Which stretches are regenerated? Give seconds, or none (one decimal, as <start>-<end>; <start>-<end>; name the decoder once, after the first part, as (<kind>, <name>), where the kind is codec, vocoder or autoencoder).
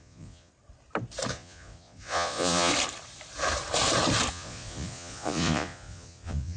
0.0-0.5 (vocoder, Vocos); 1.3-2.7; 4.3-6.6